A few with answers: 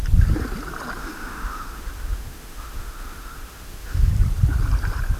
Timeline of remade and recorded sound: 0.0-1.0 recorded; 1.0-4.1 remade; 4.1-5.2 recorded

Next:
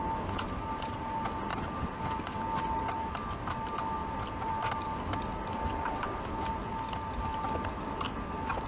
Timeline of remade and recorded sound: 0.0-8.7 recorded